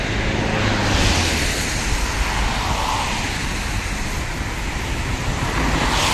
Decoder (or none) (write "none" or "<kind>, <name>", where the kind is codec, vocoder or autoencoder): none